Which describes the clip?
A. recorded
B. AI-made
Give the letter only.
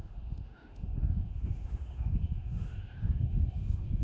B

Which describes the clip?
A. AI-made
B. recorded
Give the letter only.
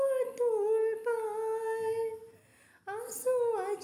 B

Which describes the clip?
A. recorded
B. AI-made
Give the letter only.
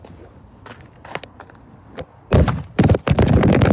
A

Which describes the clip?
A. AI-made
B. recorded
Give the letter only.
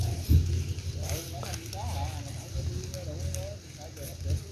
B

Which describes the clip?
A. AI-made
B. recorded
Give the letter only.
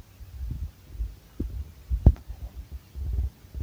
B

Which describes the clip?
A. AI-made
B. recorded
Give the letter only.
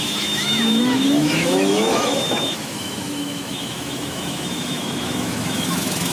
A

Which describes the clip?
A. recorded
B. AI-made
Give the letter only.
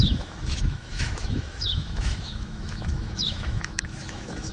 B